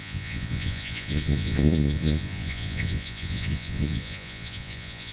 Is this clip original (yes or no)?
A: no